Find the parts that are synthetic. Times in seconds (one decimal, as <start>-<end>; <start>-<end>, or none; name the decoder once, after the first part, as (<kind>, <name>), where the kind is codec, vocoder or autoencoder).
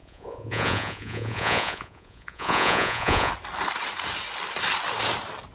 0.0-3.3 (vocoder, Vocos)